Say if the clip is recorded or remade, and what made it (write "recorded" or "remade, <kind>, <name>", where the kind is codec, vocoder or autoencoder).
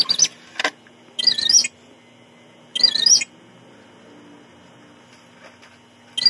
recorded